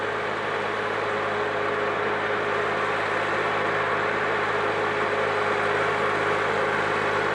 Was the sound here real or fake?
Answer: real